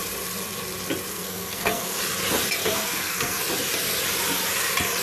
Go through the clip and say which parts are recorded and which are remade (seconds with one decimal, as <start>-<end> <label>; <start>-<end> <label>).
0.0-1.1 recorded; 1.1-2.0 remade; 2.0-2.6 recorded; 2.6-3.4 remade; 3.4-5.0 recorded